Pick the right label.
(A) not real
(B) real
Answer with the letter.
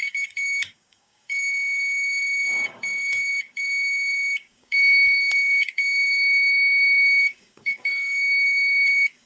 A